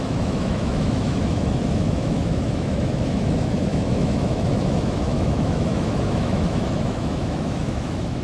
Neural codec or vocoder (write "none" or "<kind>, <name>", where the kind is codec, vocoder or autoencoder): autoencoder, DAC-VAE